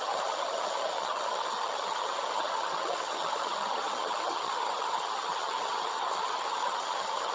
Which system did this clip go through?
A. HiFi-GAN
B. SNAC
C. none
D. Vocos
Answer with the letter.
A